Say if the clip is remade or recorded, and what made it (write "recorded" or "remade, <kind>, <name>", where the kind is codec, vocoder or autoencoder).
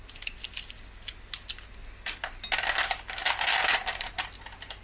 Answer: recorded